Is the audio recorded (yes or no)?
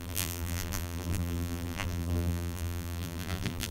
no